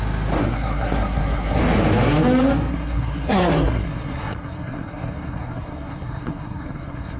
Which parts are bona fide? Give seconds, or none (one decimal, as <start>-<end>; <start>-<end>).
0.0-0.4; 1.6-2.7